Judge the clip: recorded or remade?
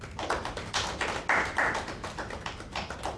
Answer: recorded